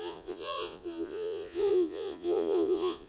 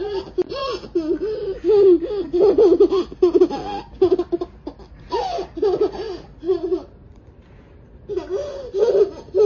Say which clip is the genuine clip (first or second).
second